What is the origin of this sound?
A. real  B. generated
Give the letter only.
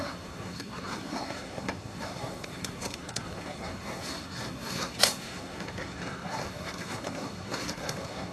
B